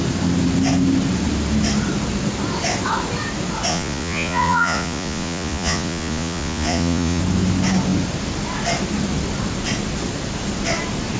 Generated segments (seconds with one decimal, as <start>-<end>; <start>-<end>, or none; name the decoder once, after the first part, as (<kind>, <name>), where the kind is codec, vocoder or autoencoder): 3.7-7.2 (vocoder, Vocos)